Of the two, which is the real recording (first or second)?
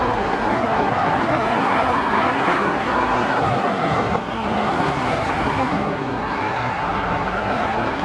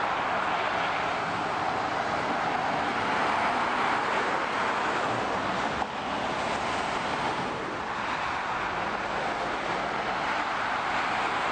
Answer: second